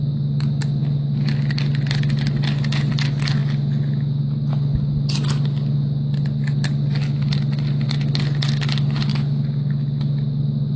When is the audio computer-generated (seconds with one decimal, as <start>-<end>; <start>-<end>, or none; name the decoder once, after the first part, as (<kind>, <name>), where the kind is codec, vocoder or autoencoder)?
none